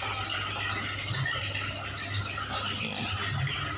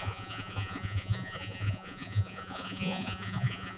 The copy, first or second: second